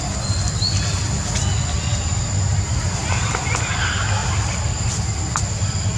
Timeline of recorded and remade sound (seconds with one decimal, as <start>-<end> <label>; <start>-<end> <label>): 0.0-1.9 recorded; 1.9-3.4 remade; 3.4-4.2 recorded; 4.2-4.9 remade; 4.9-6.0 recorded